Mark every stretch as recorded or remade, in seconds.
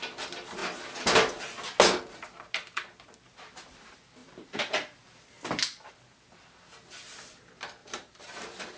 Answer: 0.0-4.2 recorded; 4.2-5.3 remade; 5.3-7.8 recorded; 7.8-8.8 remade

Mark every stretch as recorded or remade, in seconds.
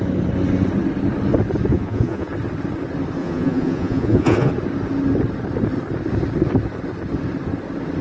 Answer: 0.0-1.7 recorded; 1.7-2.3 remade; 2.3-3.2 recorded; 3.2-4.5 remade; 4.5-8.0 recorded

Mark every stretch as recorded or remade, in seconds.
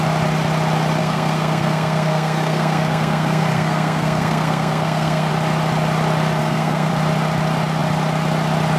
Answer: 0.0-1.0 recorded; 1.0-5.3 remade; 5.3-6.4 recorded; 6.4-6.9 remade; 6.9-8.8 recorded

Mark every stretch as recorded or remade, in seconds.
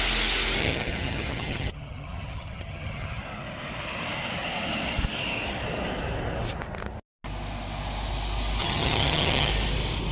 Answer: 0.0-0.6 recorded; 0.6-3.2 remade; 3.2-8.6 recorded; 8.6-9.5 remade; 9.5-10.1 recorded